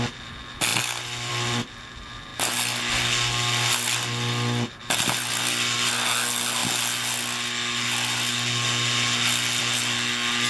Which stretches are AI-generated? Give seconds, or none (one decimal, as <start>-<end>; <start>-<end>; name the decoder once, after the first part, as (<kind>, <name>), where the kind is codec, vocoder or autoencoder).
none